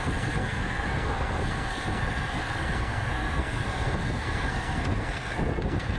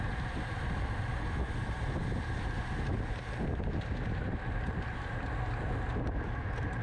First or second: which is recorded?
second